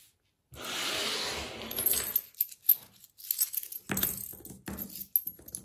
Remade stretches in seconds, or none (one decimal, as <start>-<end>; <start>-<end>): none